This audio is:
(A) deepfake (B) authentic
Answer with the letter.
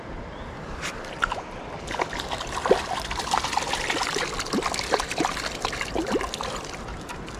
B